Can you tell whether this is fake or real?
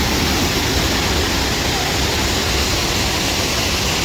real